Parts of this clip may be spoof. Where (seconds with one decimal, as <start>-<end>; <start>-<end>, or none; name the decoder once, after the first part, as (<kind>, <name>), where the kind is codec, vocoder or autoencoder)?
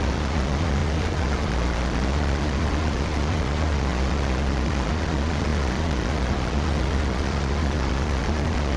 0.0-8.8 (vocoder, Vocos)